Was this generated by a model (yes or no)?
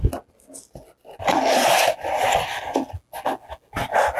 no